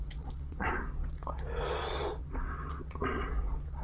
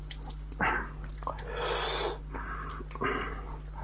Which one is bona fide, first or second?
second